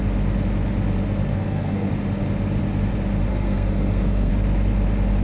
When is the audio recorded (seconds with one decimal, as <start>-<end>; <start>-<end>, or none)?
0.0-1.3; 1.9-3.3; 4.3-5.2